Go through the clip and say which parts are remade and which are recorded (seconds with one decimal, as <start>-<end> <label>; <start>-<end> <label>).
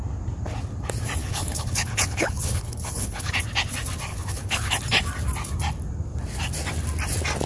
0.0-1.2 recorded; 1.2-3.3 remade; 3.3-4.1 recorded; 4.1-4.7 remade; 4.7-7.5 recorded